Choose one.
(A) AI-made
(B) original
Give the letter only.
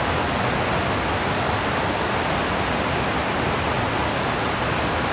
B